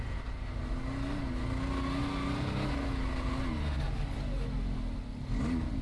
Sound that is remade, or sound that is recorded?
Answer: recorded